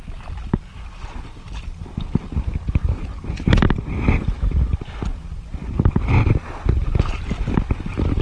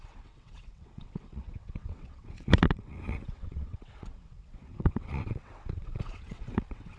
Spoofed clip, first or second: second